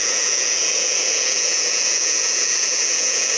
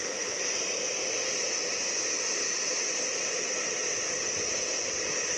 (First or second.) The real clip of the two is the second